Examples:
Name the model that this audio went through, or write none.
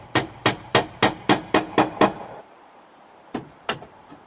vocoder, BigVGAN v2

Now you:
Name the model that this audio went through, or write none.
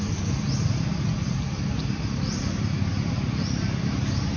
vocoder, BigVGAN v2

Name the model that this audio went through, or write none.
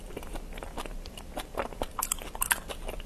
none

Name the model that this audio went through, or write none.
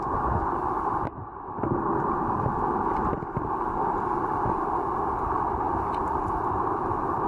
none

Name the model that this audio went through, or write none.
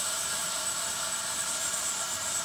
vocoder, BigVGAN v2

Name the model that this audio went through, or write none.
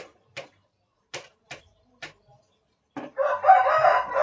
none